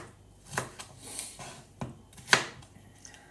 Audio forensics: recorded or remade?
recorded